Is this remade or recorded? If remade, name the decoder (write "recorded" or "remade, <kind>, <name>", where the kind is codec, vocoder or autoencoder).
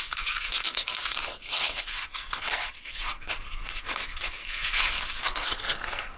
remade, codec, SNAC